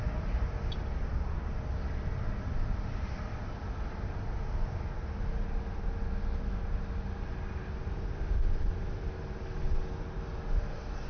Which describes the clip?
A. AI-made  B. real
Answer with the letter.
B